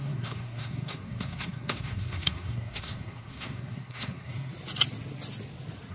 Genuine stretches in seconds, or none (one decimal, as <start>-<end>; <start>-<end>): 4.5-5.9